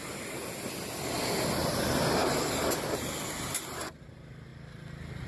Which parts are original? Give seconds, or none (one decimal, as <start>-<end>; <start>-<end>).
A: 0.0-5.3